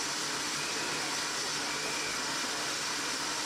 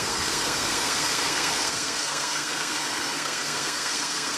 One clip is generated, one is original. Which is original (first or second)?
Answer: first